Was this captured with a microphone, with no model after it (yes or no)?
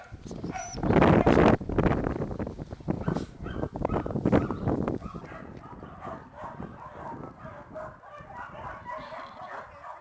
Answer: yes